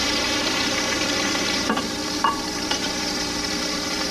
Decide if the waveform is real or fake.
fake